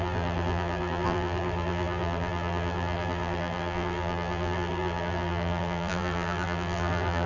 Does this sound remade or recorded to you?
remade